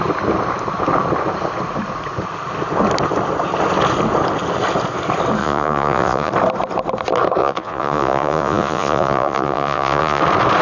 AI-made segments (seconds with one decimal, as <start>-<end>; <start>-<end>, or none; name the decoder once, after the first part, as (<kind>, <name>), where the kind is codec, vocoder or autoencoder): 5.4-6.3 (vocoder, Vocos); 7.4-10.2